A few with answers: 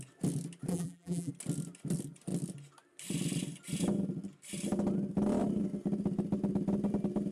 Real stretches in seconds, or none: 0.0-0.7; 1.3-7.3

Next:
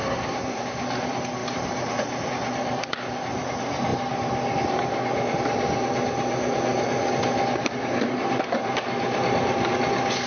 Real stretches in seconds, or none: 0.6-10.3

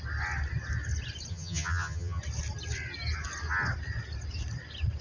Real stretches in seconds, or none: 0.0-1.3; 2.2-5.0

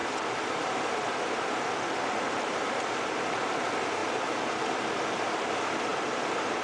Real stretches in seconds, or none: 2.8-5.9

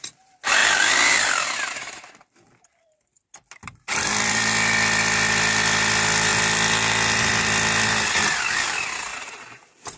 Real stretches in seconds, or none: 0.0-0.6; 4.4-9.1

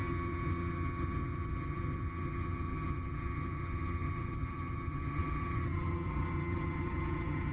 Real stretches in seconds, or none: none

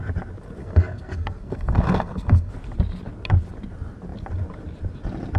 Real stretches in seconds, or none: 0.0-0.6; 2.5-5.4

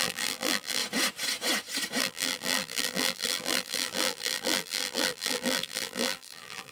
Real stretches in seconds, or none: 0.8-2.0